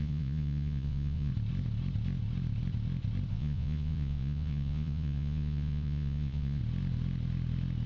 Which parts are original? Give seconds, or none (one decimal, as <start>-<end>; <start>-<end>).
1.3-3.3; 6.6-7.9